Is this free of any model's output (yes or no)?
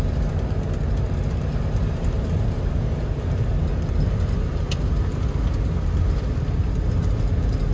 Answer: yes